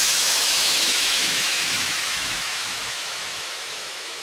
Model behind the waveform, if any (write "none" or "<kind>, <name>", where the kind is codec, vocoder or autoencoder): autoencoder, DAC-VAE